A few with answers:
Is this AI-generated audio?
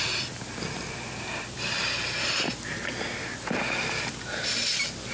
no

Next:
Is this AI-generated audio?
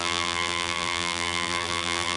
yes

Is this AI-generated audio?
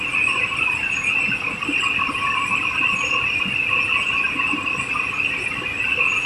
no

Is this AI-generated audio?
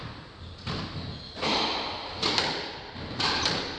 no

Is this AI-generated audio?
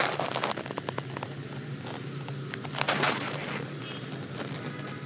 no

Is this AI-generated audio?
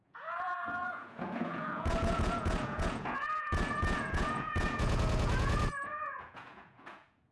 yes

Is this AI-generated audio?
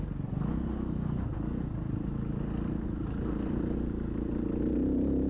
no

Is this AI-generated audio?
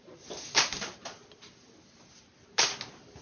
no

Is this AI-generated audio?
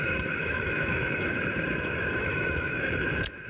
yes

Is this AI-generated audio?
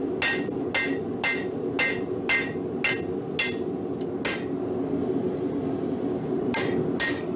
no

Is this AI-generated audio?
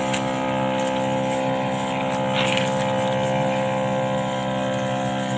no